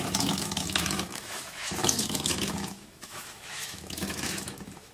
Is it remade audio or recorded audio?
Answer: remade